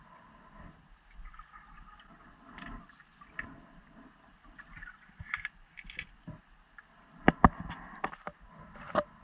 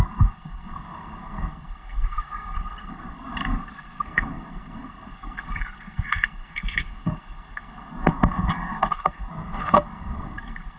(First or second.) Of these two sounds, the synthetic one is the second